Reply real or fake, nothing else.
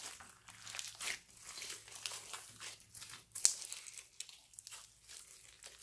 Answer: real